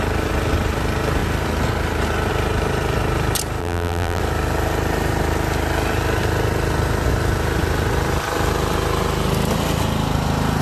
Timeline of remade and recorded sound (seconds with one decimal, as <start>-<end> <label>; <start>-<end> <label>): 0.0-3.6 recorded; 3.6-4.2 remade; 4.2-10.6 recorded